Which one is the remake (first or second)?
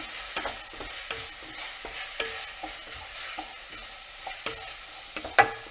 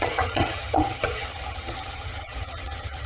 second